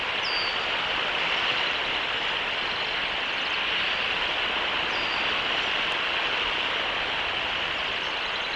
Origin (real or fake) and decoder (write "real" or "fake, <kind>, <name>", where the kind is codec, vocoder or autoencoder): real